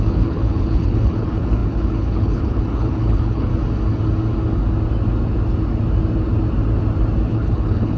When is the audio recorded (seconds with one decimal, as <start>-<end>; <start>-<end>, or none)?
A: 3.5-7.3